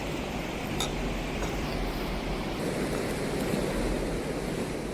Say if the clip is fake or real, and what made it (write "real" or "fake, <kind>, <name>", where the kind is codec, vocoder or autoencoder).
real